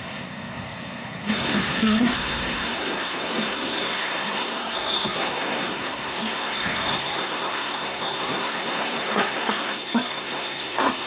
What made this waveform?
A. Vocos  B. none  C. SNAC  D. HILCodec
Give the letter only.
C